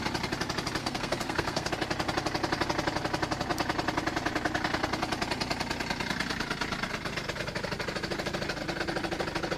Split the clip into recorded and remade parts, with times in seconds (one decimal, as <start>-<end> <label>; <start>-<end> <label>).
0.0-0.8 recorded; 0.8-1.7 remade; 1.7-9.6 recorded